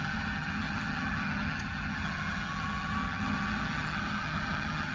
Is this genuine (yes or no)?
no